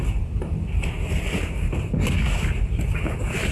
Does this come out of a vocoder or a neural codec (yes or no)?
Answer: no